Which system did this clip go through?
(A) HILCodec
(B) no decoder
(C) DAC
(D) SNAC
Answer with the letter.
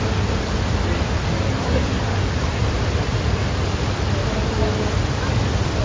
B